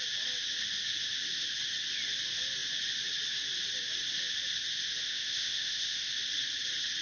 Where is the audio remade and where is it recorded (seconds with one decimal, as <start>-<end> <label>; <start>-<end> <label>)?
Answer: 0.0-5.0 recorded; 5.0-6.1 remade; 6.1-7.0 recorded